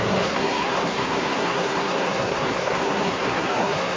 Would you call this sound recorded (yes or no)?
no